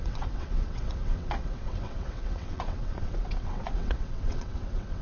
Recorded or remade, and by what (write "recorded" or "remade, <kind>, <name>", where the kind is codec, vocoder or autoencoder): remade, vocoder, WaveNeXt